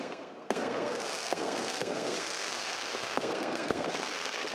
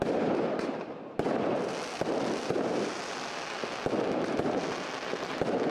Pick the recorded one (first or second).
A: second